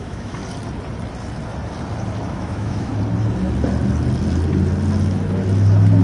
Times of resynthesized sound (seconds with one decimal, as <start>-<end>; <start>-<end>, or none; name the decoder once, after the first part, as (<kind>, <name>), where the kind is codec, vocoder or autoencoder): 0.0-0.4 (autoencoder, DAC-VAE); 2.3-2.9